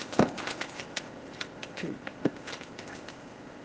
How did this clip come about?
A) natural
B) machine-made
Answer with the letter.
B